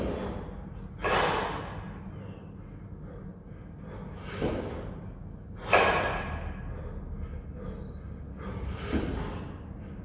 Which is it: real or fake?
real